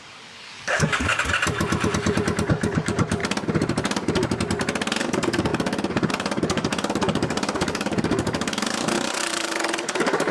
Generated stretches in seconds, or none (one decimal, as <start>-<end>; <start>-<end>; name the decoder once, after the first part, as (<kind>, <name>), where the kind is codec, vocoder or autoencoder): 0.0-1.1 (codec, DAC); 2.5-3.2; 5.0-10.3